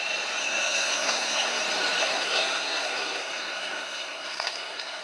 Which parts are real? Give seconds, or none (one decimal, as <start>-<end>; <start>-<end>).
0.0-0.4; 1.6-2.0